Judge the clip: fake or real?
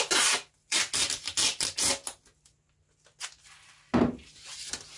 real